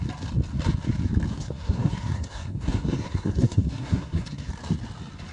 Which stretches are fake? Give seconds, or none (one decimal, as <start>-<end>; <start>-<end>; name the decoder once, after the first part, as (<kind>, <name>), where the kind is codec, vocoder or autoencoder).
1.3-4.5 (codec, SNAC)